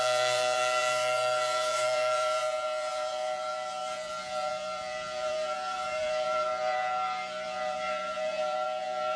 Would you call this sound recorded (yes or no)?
no